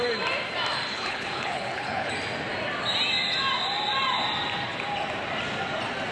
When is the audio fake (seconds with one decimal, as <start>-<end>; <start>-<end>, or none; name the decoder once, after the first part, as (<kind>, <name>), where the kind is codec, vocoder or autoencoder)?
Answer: 0.9-2.1 (codec, HILCodec)